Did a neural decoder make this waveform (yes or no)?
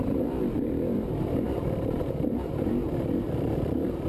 yes